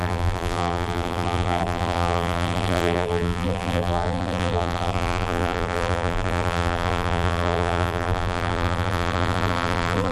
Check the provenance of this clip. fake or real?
fake